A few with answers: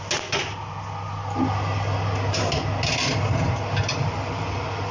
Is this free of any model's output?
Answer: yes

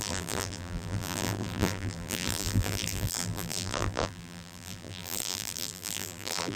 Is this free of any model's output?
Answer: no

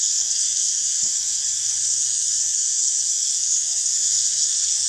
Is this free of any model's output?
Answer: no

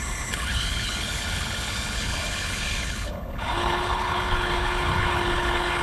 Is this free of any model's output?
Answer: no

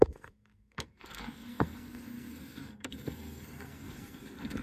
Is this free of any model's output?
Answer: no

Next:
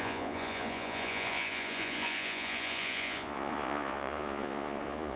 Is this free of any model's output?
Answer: no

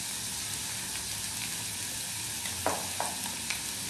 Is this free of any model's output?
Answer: yes